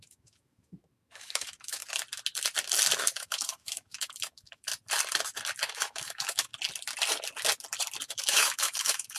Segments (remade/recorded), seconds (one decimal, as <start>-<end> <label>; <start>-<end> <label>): 0.0-1.8 remade; 1.8-3.0 recorded; 3.0-4.7 remade; 4.7-5.6 recorded; 5.6-6.5 remade; 6.5-8.1 recorded; 8.1-9.2 remade